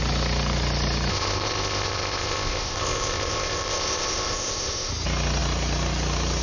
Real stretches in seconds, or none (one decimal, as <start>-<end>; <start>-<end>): 0.0-1.1; 4.9-6.4